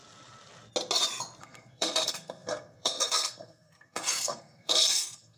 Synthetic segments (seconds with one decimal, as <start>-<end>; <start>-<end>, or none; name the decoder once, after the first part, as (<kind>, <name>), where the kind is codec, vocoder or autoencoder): 1.4-5.4 (codec, SNAC)